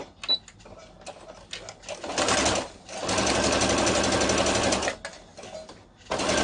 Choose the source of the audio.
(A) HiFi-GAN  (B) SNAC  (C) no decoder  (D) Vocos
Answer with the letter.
C